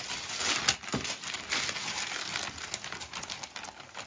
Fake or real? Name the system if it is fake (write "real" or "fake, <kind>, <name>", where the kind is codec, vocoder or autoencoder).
real